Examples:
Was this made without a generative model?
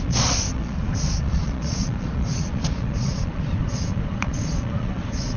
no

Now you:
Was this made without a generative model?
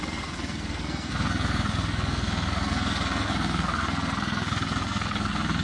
no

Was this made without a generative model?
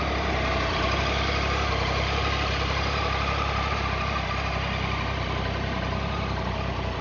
no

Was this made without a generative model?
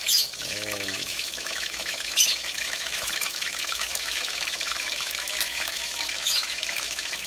no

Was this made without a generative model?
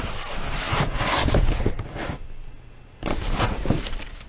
yes